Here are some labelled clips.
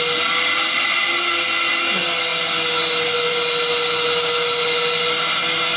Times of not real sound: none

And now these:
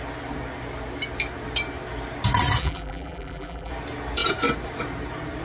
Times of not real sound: 2.6-3.7

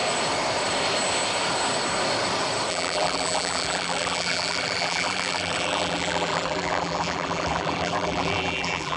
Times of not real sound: 2.7-9.0

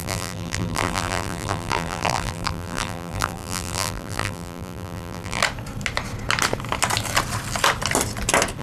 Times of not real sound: 0.0-5.4

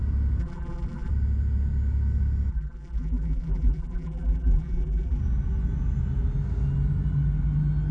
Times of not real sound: 0.4-1.1; 2.5-5.2

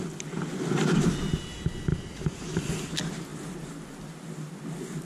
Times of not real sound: 1.9-2.7; 3.3-4.2

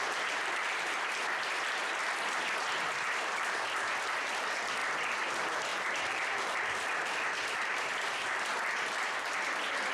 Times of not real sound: 0.0-4.8; 5.3-9.9

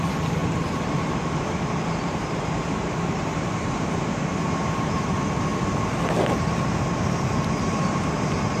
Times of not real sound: 0.0-5.5; 7.0-8.6